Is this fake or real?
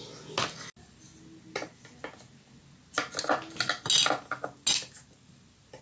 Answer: real